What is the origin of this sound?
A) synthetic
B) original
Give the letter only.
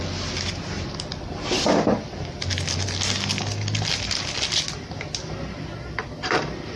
B